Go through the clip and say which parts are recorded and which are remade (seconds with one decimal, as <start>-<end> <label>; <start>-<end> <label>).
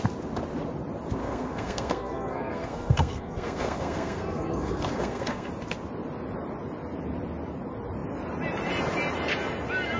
0.0-1.2 recorded; 1.2-5.5 remade; 5.5-10.0 recorded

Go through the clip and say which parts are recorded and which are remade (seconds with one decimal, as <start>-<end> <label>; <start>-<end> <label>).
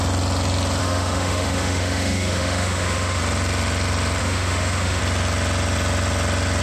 0.0-0.8 recorded; 0.8-3.2 remade; 3.2-4.2 recorded; 4.2-5.0 remade; 5.0-6.6 recorded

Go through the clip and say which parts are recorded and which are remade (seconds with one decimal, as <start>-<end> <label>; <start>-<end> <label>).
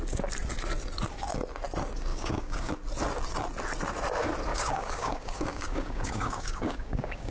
0.0-2.1 recorded; 2.1-2.7 remade; 2.7-4.5 recorded; 4.5-7.3 remade